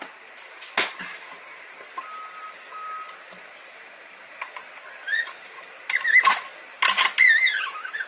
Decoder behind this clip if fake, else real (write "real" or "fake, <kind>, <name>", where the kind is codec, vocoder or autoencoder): real